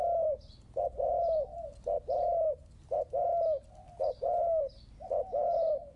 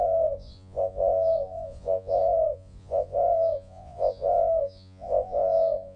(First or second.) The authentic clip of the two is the first